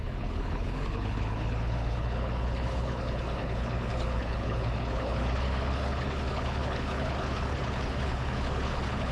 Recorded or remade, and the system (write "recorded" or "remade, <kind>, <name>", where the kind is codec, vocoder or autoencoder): remade, codec, HILCodec